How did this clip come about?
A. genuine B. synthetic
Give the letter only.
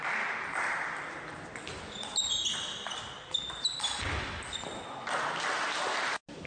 A